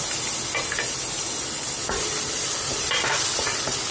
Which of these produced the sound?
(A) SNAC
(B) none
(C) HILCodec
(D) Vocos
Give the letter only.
B